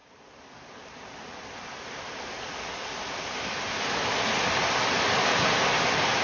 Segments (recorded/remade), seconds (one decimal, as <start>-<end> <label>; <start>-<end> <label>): 0.0-6.2 recorded